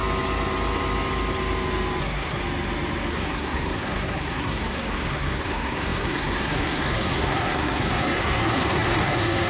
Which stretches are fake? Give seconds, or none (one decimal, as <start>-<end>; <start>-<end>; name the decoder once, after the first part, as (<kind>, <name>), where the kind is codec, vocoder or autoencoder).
2.0-2.4 (codec, SNAC); 3.1-9.5